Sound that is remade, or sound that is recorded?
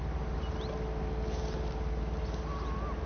recorded